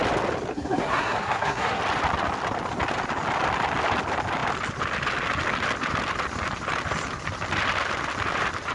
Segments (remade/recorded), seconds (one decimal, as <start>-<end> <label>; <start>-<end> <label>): 0.0-0.5 recorded; 0.5-1.8 remade; 1.8-8.7 recorded